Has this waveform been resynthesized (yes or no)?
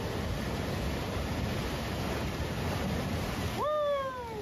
no